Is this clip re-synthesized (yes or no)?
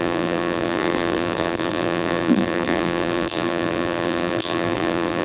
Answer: yes